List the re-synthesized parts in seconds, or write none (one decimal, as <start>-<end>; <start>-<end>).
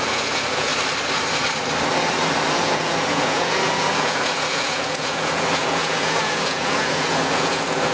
0.0-0.7; 2.5-7.9